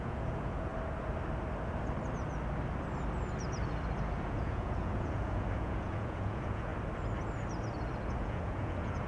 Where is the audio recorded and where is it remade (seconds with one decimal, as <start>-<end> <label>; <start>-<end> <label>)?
0.0-0.7 remade; 0.7-4.2 recorded; 4.2-6.7 remade; 6.7-8.1 recorded; 8.1-9.1 remade